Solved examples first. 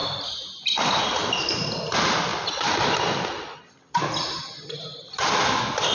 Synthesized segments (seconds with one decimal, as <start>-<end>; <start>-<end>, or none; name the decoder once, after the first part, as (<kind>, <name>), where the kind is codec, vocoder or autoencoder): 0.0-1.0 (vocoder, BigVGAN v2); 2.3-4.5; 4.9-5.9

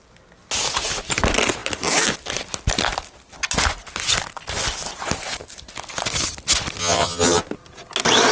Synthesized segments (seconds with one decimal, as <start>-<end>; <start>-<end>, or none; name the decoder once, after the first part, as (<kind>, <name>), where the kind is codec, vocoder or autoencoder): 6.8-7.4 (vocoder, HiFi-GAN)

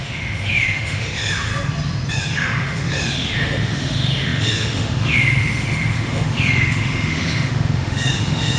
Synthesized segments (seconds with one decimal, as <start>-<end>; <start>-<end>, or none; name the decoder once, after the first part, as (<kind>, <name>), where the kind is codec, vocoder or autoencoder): 0.0-1.5 (autoencoder, DAC-VAE); 2.1-8.6

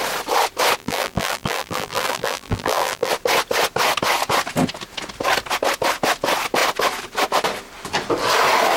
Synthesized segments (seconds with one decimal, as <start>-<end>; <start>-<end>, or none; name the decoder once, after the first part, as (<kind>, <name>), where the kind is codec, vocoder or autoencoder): 0.8-3.1 (vocoder, BigVGAN v2)

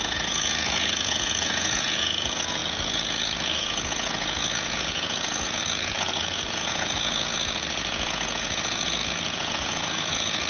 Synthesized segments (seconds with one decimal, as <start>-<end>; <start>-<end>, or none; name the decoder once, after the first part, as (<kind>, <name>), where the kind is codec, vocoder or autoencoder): 0.0-10.5 (vocoder, Vocos)

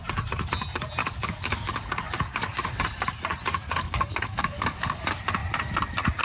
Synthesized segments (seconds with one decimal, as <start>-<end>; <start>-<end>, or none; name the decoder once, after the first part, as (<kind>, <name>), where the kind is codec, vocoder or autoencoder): 1.0-2.8 (codec, DAC); 3.7-5.0